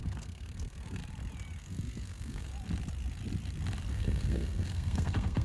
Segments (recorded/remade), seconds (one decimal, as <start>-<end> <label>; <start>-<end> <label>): 0.0-1.0 remade; 1.0-1.6 recorded; 1.6-2.5 remade; 2.5-3.9 recorded; 3.9-5.4 remade